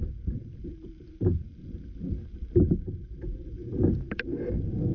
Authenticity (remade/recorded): remade